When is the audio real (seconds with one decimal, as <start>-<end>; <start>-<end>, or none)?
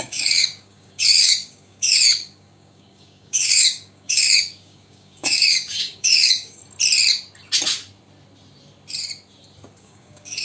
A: 6.6-9.8